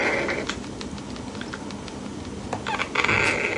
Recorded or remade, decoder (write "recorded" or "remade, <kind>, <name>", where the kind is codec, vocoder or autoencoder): recorded